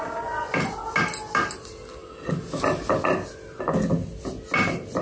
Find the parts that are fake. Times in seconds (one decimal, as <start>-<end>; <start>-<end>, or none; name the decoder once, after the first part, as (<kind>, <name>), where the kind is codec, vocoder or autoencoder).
none